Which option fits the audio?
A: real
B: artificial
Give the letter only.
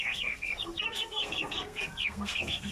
B